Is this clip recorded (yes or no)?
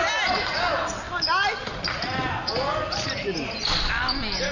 yes